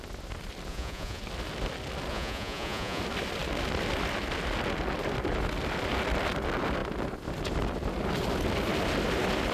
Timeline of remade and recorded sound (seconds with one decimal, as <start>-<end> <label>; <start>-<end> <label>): 0.0-0.7 recorded; 0.7-1.2 remade; 1.2-2.1 recorded; 2.1-3.0 remade; 3.0-9.5 recorded